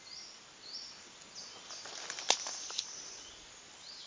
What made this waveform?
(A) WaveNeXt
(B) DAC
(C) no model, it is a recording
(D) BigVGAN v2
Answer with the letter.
C